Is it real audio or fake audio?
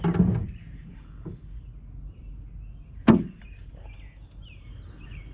real